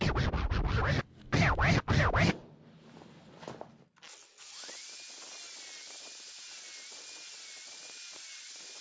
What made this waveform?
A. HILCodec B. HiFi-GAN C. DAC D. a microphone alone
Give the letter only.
D